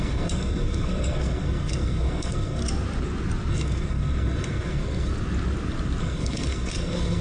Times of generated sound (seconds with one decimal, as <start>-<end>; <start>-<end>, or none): 0.0-2.6; 3.5-5.1; 6.0-7.2